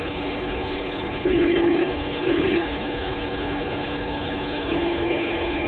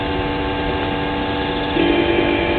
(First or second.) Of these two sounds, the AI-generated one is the first